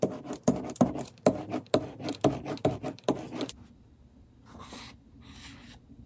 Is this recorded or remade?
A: recorded